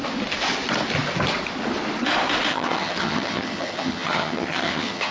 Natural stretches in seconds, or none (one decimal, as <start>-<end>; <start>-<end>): 0.0-2.5